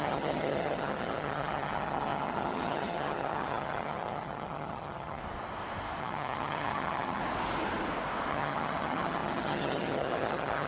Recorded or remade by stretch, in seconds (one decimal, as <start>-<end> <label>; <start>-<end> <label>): 0.0-5.2 remade; 5.2-6.0 recorded; 6.0-7.2 remade; 7.2-8.3 recorded; 8.3-10.7 remade